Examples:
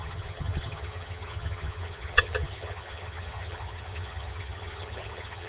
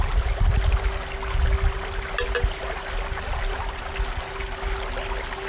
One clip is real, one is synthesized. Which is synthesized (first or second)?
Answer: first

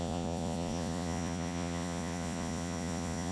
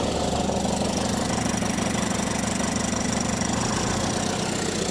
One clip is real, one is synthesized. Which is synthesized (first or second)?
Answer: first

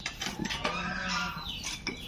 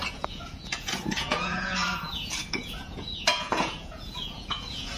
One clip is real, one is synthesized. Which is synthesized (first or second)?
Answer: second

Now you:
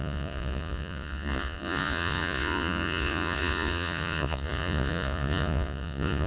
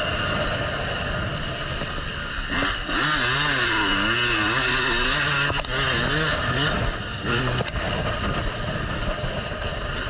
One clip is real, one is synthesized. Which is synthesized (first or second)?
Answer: first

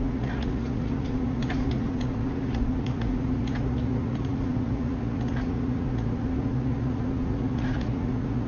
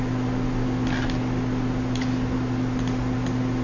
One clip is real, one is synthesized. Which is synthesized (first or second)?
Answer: first